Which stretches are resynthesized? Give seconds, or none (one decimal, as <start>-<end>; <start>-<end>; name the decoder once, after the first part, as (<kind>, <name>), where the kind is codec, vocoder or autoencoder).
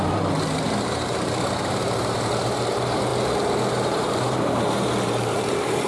0.0-3.1 (vocoder, BigVGAN v2); 3.7-5.9